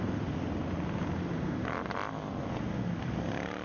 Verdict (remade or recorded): recorded